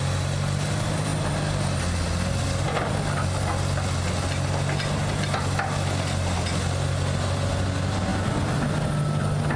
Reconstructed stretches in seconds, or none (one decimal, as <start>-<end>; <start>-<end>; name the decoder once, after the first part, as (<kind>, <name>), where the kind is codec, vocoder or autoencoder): none